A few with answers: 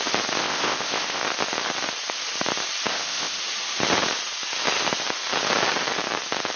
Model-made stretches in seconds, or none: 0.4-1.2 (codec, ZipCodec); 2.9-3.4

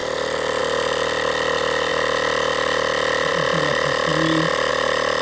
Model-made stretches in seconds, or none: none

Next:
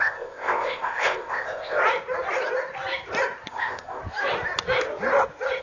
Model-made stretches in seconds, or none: 0.0-1.8 (codec, ZipCodec); 3.5-4.0